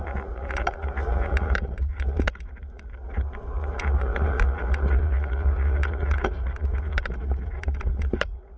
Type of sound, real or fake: fake